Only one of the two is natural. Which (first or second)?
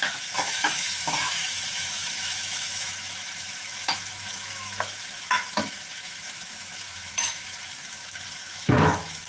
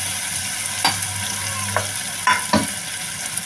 second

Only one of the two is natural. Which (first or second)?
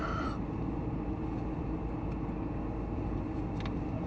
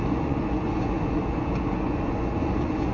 first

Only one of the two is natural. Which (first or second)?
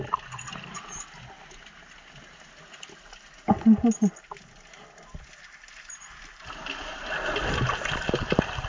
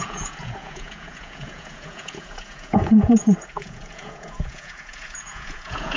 first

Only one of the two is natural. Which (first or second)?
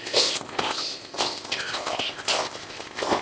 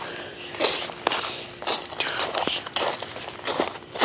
second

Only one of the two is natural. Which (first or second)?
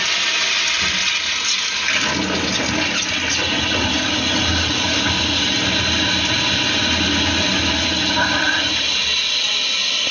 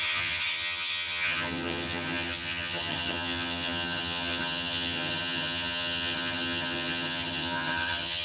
first